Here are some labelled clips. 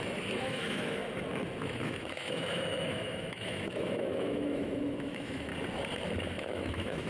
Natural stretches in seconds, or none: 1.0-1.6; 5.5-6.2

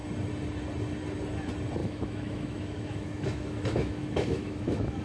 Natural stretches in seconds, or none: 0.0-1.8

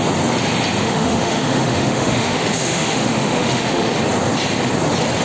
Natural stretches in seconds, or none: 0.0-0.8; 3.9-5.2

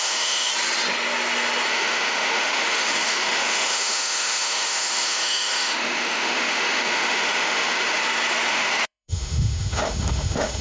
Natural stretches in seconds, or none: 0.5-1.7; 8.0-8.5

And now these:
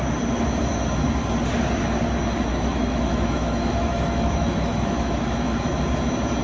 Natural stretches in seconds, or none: 0.0-2.5; 5.6-6.4

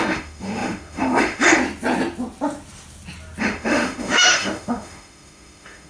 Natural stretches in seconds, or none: 1.6-3.4

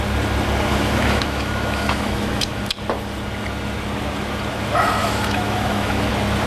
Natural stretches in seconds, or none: 0.0-0.7; 2.6-5.0; 6.1-6.5